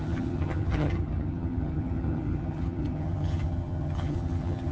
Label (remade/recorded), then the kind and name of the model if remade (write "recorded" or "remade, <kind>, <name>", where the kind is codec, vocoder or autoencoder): remade, vocoder, HiFi-GAN